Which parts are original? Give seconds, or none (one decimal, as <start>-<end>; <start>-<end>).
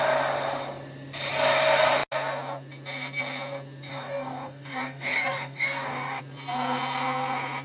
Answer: 0.0-3.9; 6.2-7.6